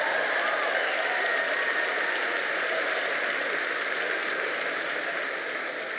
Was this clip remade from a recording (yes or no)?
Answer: no